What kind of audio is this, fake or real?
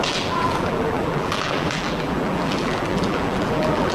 fake